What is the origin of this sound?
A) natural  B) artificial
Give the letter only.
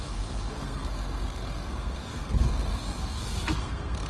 B